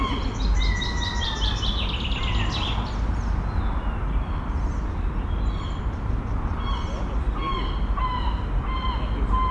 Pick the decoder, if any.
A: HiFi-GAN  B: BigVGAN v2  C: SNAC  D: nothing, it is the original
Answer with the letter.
D